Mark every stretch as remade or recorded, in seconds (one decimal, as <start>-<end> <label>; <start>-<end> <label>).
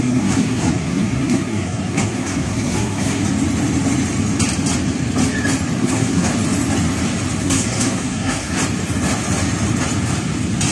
0.0-3.2 remade; 3.2-5.8 recorded; 5.8-6.3 remade; 6.3-7.4 recorded; 7.4-8.6 remade; 8.6-10.7 recorded